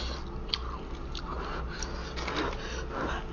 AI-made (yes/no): no